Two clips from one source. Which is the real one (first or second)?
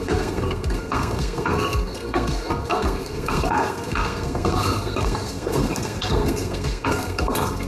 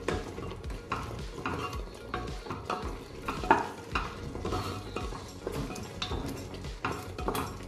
second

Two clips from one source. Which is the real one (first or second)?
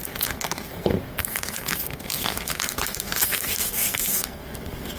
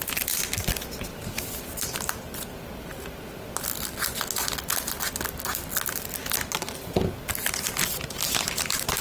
second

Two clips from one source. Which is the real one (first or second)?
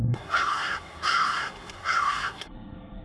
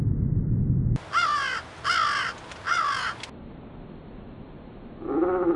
second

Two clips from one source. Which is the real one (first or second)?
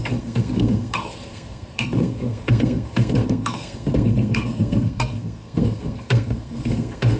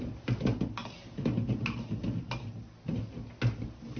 second